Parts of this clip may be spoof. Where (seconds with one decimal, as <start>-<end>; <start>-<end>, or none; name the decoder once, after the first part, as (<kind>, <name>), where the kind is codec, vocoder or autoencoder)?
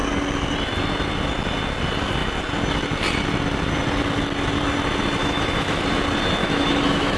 5.2-5.8 (autoencoder, DAC-VAE); 6.4-7.2